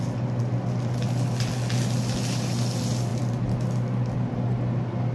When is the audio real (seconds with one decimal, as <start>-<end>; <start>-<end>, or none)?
0.0-5.1